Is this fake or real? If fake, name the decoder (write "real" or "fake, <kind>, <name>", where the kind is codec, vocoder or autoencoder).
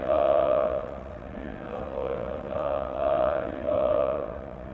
fake, vocoder, WaveNeXt